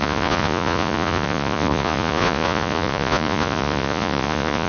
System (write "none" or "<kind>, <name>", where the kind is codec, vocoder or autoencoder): vocoder, Vocos